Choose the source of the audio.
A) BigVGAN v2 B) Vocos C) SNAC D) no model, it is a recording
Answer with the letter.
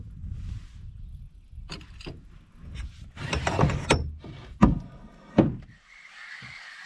D